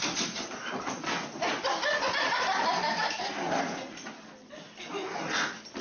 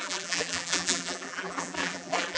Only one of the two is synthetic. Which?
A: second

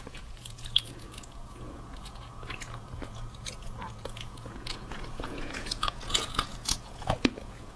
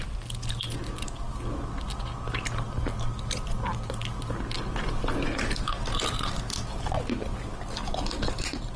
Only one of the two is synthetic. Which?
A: first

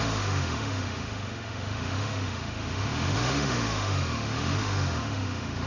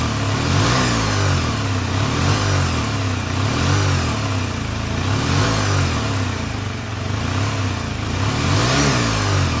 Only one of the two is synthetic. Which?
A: first